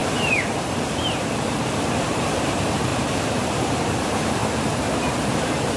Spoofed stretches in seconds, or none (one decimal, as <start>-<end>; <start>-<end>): 0.0-5.8